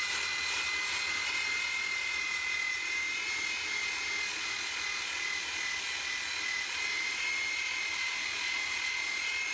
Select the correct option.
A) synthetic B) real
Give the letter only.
B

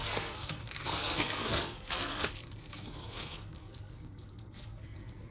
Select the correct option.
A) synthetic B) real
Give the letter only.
A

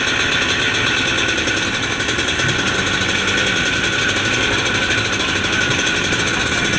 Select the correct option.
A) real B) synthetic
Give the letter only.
A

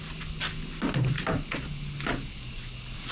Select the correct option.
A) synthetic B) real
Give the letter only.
B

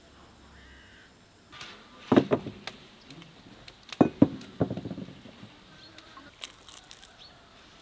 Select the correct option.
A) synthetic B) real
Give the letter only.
B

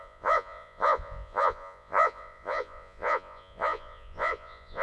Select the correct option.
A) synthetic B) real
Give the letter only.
A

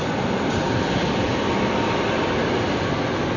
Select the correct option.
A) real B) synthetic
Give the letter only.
A